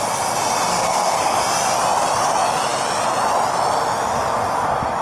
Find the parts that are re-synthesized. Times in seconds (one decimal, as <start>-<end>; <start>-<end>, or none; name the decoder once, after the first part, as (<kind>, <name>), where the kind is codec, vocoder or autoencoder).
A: 0.7-1.4 (codec, SNAC)